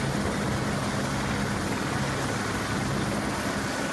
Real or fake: real